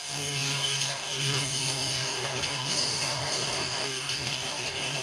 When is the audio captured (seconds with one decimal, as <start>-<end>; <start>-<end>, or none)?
none